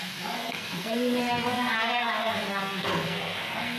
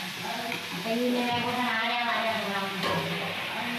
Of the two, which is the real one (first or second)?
second